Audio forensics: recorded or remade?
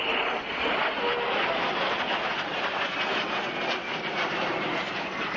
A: recorded